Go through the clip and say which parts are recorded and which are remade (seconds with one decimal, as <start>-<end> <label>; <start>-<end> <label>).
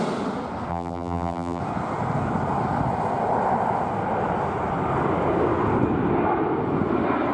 0.0-0.7 recorded; 0.7-1.6 remade; 1.6-7.3 recorded